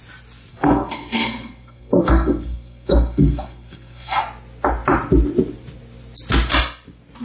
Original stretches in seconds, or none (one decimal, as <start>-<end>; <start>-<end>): 0.0-0.5; 4.2-7.2